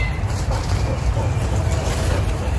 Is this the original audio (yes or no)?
yes